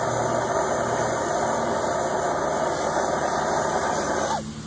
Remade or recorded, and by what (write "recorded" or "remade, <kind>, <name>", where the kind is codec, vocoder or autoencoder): recorded